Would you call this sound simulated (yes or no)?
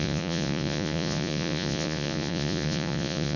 yes